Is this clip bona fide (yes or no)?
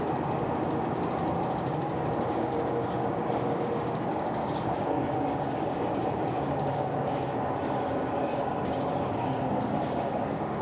no